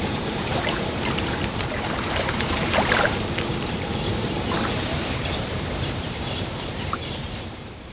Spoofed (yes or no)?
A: yes